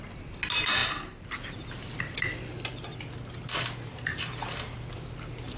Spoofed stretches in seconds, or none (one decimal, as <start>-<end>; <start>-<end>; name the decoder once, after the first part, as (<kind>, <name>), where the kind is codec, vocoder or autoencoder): none